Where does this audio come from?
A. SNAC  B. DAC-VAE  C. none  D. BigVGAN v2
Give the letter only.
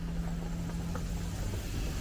C